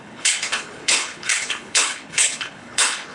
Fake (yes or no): yes